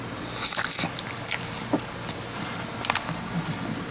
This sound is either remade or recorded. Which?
recorded